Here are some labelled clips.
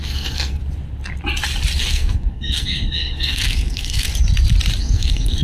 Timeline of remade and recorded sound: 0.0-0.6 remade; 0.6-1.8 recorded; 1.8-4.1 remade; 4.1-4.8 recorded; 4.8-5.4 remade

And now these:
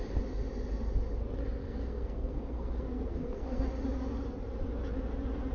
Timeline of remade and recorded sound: 0.0-1.6 recorded; 1.6-3.6 remade; 3.6-5.5 recorded

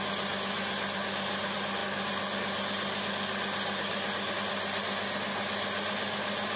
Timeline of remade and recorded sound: 0.0-6.6 recorded

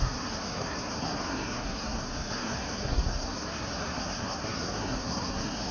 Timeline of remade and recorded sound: 0.0-5.7 remade

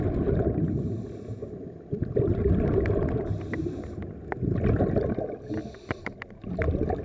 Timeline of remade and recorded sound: 0.0-7.0 recorded

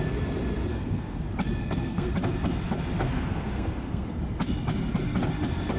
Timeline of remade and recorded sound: 0.0-0.7 recorded; 0.7-1.2 remade; 1.2-1.6 recorded; 1.6-2.1 remade; 2.1-3.0 recorded; 3.0-4.1 remade; 4.1-5.8 recorded

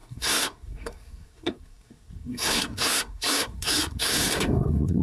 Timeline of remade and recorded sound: 0.0-5.0 remade

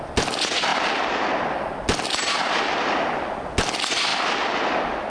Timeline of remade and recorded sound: 0.0-5.1 recorded